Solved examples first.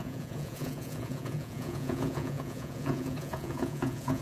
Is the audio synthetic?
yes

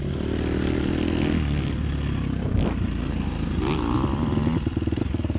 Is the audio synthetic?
no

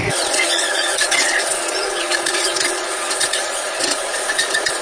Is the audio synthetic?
yes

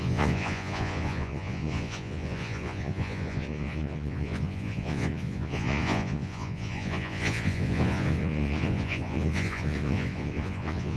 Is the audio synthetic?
yes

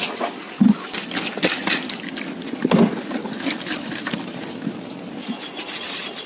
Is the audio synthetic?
no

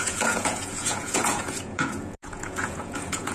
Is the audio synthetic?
yes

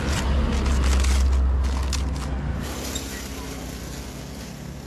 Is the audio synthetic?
no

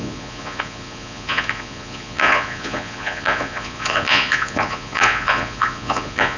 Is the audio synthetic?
yes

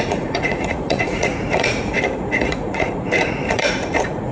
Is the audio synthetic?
yes